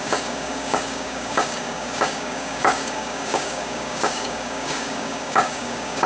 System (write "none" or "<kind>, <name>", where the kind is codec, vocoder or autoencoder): codec, DAC